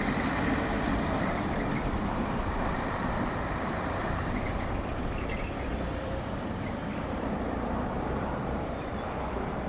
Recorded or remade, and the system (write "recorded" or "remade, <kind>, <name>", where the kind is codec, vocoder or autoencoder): remade, vocoder, BigVGAN v2